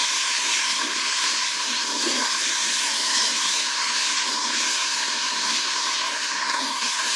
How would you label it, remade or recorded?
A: remade